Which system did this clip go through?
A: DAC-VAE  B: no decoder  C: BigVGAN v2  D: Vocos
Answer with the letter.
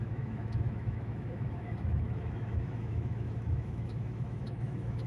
A